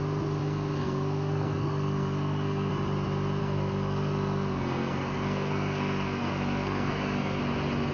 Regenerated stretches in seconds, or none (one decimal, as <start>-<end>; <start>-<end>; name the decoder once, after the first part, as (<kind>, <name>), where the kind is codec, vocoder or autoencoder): 0.4-2.7 (codec, SNAC); 3.4-7.4